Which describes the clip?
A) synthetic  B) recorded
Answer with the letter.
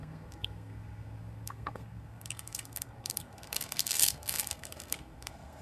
A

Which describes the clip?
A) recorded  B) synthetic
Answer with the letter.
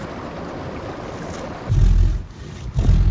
A